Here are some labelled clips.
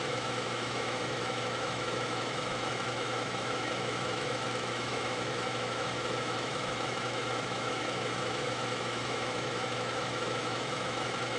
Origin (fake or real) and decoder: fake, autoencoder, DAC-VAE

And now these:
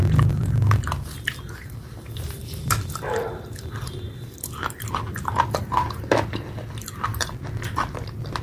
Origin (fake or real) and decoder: real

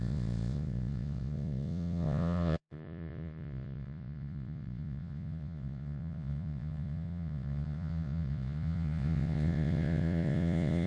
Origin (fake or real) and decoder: fake, vocoder, Vocos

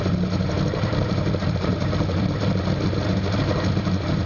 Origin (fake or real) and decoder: fake, vocoder, BigVGAN v2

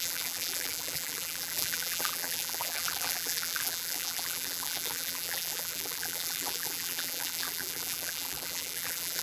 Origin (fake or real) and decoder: fake, vocoder, BigVGAN v2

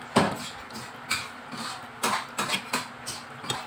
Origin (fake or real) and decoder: real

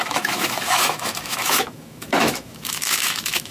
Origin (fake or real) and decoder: fake, autoencoder, DAC-VAE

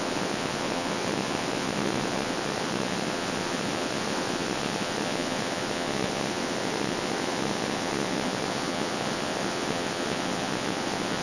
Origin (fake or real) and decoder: fake, vocoder, WaveNeXt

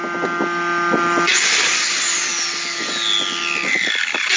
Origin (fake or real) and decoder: real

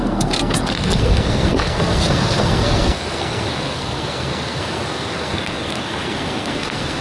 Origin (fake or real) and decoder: fake, codec, SNAC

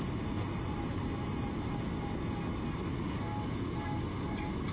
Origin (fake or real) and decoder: real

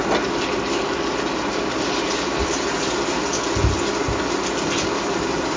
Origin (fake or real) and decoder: real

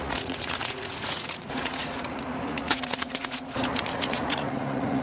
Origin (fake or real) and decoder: fake, vocoder, Vocos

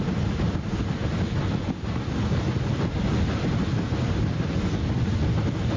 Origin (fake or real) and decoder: real